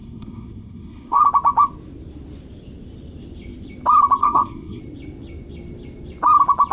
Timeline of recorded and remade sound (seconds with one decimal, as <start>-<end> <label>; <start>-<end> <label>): 0.0-1.2 remade; 1.2-4.2 recorded; 4.2-4.8 remade; 4.8-6.7 recorded